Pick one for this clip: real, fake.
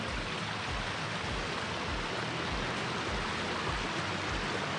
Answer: real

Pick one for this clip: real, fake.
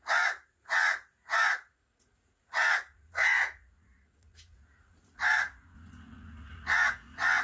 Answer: fake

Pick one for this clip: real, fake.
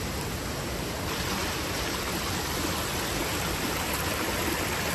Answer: real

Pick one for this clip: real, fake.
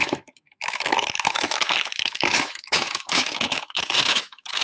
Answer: fake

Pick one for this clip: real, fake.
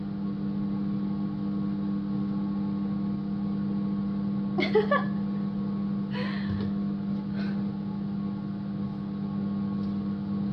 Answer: real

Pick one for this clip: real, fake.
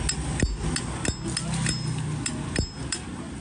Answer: real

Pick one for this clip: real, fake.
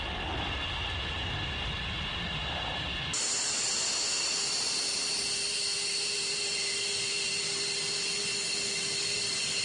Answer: real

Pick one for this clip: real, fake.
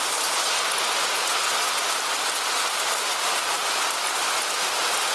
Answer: real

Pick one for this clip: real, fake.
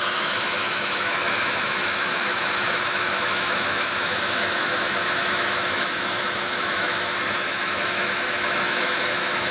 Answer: fake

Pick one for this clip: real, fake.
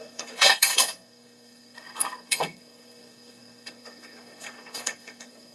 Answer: fake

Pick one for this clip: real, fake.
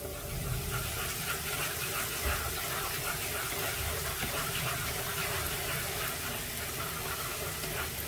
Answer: real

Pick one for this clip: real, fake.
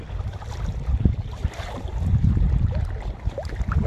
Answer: real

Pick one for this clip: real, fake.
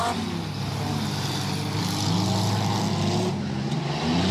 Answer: real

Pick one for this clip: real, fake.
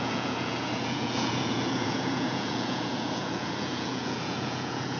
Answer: fake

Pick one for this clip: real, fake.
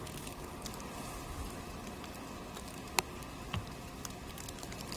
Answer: real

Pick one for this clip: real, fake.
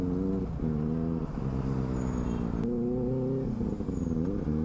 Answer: real